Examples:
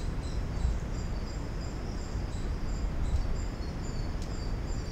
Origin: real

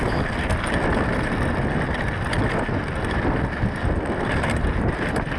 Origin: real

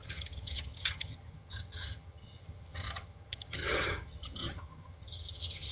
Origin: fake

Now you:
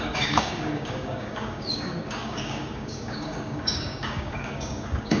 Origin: fake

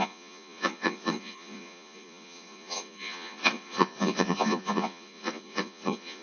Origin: fake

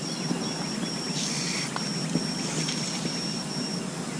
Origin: real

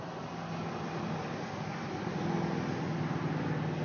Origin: real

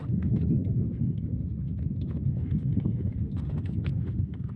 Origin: fake